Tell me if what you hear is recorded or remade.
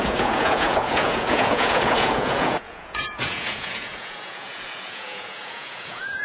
remade